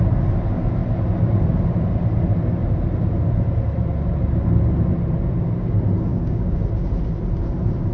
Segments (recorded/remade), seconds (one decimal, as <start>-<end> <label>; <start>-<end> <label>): 0.0-6.1 recorded; 6.1-6.6 remade; 6.6-7.9 recorded